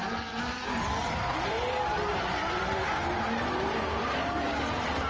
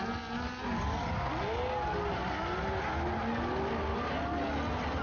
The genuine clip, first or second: second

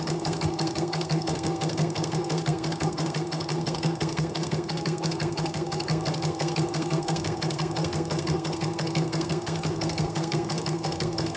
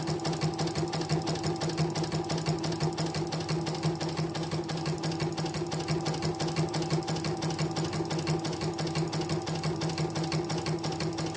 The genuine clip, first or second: second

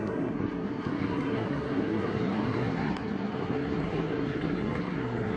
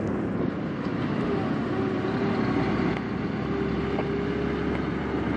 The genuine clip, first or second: second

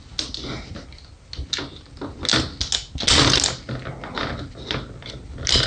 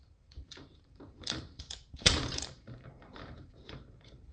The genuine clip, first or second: first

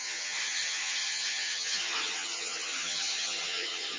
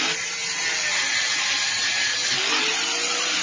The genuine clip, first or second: second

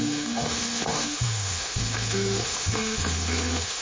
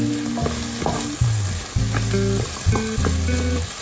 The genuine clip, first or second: second